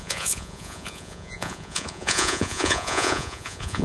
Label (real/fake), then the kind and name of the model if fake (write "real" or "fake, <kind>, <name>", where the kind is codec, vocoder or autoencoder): fake, vocoder, Vocos